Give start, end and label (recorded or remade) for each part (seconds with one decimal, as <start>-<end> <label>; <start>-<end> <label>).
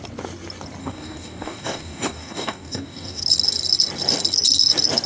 0.0-0.8 recorded; 0.8-3.2 remade; 3.2-5.1 recorded